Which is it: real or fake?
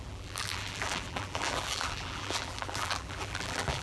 fake